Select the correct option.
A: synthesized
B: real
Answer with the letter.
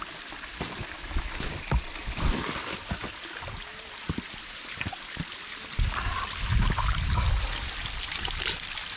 B